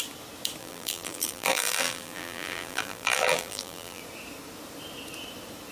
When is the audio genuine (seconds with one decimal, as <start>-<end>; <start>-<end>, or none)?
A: 0.0-0.6; 4.0-5.7